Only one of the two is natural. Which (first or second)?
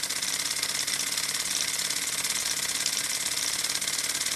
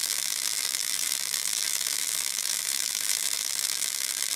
first